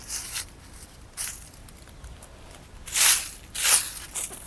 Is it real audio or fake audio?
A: real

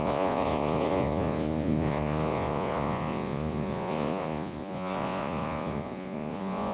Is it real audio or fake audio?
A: fake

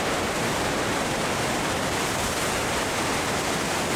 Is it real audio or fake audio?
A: real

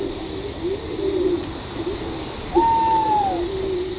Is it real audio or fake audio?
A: real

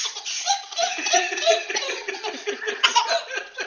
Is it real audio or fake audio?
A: fake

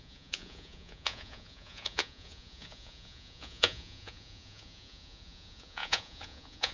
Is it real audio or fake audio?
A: fake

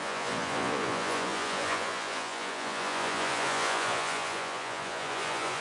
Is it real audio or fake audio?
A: fake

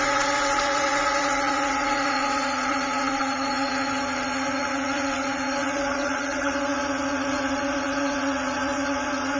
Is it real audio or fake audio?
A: fake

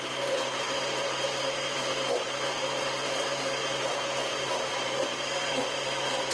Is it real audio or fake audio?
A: real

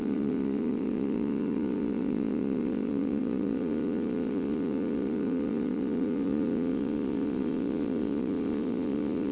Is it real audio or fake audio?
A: fake